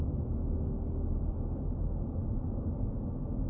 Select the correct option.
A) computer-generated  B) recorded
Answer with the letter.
B